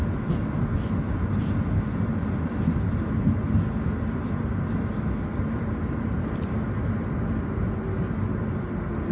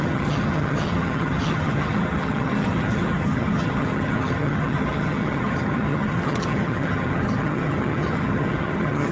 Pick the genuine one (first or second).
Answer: first